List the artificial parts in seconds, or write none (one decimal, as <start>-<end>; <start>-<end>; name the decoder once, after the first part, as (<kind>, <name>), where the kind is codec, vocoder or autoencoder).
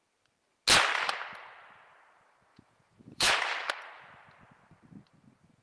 2.5-3.3 (vocoder, Vocos)